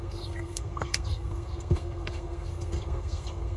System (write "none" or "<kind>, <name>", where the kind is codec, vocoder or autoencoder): codec, SNAC